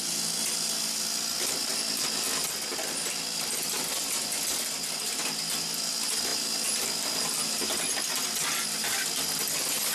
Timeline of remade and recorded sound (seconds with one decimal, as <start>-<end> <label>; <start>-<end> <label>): 0.0-9.9 recorded